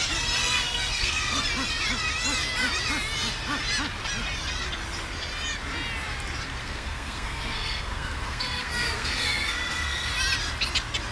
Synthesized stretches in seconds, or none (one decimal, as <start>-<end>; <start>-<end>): 0.4-1.4; 6.6-10.1